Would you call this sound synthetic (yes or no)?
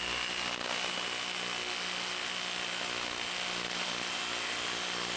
no